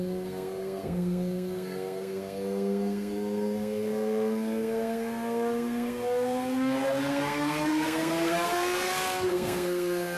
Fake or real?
fake